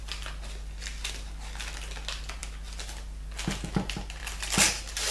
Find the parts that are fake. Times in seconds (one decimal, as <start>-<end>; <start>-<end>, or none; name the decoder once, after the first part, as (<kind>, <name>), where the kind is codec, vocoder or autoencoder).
none